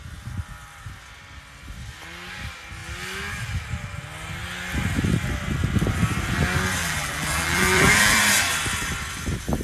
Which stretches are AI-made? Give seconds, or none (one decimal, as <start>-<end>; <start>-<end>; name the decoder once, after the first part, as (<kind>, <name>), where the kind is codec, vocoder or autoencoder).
6.8-8.2 (vocoder, BigVGAN v2)